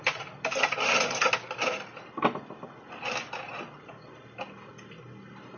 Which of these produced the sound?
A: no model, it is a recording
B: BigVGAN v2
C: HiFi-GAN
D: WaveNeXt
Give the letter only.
A